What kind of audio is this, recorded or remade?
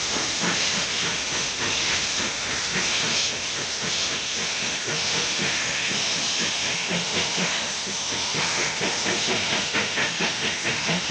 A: remade